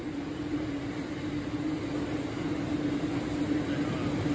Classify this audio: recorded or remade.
recorded